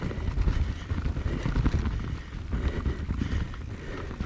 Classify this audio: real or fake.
real